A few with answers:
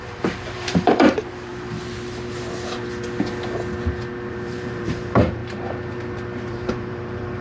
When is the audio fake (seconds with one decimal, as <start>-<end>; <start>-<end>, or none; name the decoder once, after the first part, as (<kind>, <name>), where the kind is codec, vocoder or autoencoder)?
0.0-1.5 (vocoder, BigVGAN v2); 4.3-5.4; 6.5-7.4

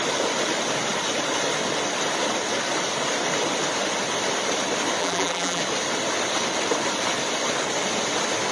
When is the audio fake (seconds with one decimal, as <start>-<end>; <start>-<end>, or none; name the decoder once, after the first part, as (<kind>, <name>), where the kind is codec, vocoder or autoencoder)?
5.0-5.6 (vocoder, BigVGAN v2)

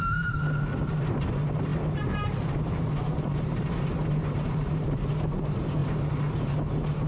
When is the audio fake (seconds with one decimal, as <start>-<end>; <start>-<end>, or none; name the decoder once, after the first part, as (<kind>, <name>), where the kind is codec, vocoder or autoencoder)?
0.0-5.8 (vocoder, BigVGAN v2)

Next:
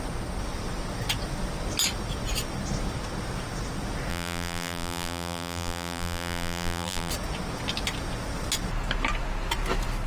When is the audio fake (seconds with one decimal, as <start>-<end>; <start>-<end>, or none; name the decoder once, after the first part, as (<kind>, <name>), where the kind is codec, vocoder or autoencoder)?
4.1-7.1 (vocoder, BigVGAN v2)

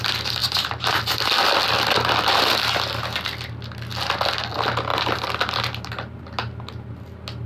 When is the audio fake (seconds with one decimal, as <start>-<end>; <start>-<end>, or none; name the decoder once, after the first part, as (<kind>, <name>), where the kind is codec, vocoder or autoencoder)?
0.4-1.0 (vocoder, BigVGAN v2)

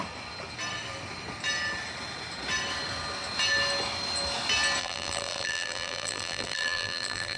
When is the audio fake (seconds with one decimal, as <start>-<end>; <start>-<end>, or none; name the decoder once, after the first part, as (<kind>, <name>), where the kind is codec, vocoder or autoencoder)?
4.8-7.4 (vocoder, BigVGAN v2)

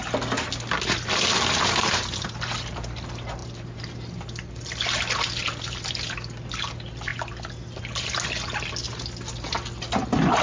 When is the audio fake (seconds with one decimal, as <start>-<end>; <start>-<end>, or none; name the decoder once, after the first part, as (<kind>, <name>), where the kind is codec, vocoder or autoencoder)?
none

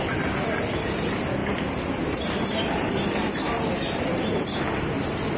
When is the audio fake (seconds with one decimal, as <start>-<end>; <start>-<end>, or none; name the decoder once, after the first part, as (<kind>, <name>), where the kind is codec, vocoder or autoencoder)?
1.4-4.6 (vocoder, BigVGAN v2)